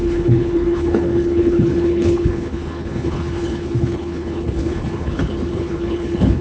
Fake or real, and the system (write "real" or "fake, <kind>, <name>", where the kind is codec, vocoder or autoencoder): fake, codec, HILCodec